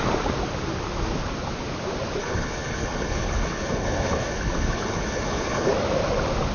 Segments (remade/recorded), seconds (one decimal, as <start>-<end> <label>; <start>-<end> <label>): 0.0-2.2 recorded; 2.2-5.7 remade; 5.7-6.5 recorded